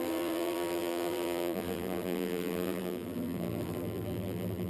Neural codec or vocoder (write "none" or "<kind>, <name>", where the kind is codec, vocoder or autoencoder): vocoder, BigVGAN v2